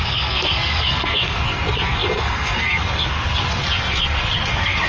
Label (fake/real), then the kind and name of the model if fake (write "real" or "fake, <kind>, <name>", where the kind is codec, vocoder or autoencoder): fake, codec, SNAC